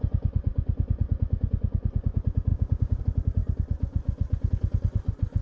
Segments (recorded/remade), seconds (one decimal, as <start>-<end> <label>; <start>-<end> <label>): 0.0-2.5 recorded; 2.5-3.0 remade; 3.0-5.4 recorded